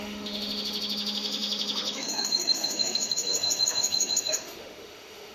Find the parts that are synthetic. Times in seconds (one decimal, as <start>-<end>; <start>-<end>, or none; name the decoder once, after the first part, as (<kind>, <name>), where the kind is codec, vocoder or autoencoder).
0.0-5.3 (autoencoder, DAC-VAE)